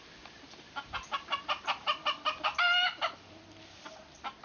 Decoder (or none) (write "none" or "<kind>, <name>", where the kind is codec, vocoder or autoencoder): vocoder, BigVGAN v2